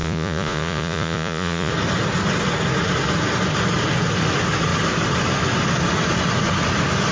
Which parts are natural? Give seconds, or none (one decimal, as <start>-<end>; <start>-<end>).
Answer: 1.7-7.1